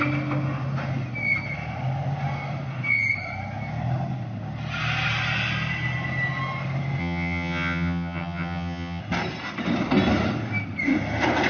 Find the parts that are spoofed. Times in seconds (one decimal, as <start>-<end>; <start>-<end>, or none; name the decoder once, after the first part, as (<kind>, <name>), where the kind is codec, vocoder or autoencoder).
7.0-9.0 (vocoder, HiFi-GAN)